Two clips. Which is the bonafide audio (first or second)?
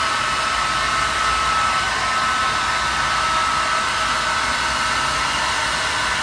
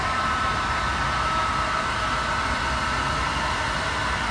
first